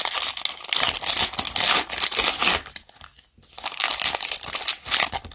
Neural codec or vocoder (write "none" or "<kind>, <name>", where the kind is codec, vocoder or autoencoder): none